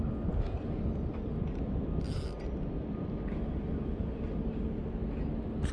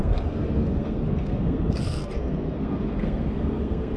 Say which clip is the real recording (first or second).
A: first